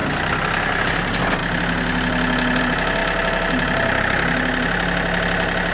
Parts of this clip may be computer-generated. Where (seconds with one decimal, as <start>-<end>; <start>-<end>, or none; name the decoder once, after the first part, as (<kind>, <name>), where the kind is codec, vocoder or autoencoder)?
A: none